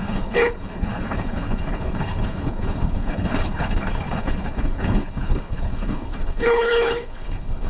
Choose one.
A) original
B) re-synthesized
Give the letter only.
B